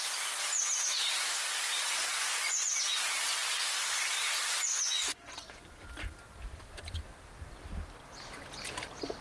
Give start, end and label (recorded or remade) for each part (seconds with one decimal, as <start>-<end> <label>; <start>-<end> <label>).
0.0-2.0 recorded; 2.0-2.8 remade; 2.8-4.7 recorded; 4.7-5.9 remade; 5.9-9.2 recorded